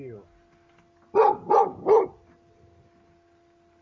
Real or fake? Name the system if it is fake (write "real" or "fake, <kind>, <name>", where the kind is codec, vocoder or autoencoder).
real